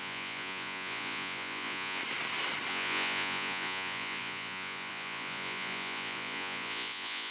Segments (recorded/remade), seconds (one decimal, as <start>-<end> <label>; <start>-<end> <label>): 0.0-2.0 remade; 2.0-2.7 recorded; 2.7-7.3 remade